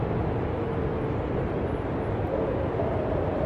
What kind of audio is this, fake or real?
real